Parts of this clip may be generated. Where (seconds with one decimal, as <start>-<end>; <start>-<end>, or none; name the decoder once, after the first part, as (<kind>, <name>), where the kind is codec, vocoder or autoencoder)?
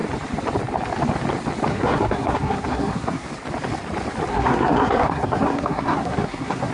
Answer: 1.7-3.3 (codec, SNAC); 4.3-6.7